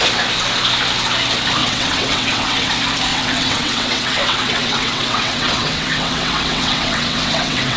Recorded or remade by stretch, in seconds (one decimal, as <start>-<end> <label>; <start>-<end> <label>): 0.0-1.6 recorded; 1.6-2.7 remade; 2.7-3.1 recorded; 3.1-7.8 remade